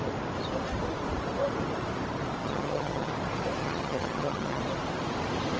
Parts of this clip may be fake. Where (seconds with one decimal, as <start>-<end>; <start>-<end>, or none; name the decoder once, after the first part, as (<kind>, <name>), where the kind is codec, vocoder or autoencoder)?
2.4-3.1 (vocoder, HiFi-GAN); 3.6-4.6